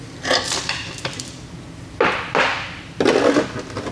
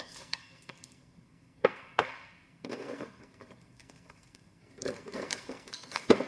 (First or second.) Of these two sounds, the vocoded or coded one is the second